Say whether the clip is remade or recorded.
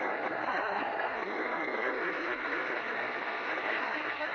remade